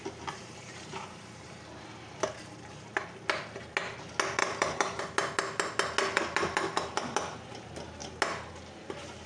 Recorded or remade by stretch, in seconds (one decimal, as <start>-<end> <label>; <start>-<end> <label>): 0.0-0.4 recorded; 0.4-1.8 remade; 1.8-4.4 recorded; 4.4-5.0 remade; 5.0-9.3 recorded